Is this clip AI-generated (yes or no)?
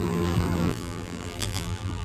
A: yes